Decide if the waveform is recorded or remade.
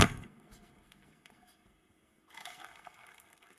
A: remade